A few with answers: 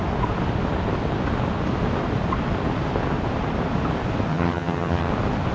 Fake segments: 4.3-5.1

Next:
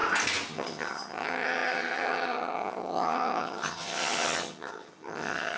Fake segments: 0.5-5.6